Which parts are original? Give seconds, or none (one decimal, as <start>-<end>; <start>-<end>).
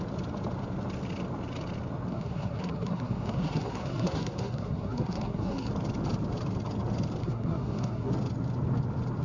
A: 0.0-2.1; 5.7-7.2; 8.1-9.2